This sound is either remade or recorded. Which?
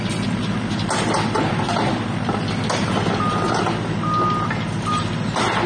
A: recorded